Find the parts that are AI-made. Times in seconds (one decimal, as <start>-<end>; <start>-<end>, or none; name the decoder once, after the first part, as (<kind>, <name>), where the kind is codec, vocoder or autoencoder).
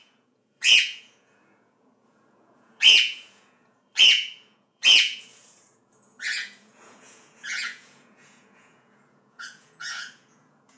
0.0-10.8 (vocoder, Vocos)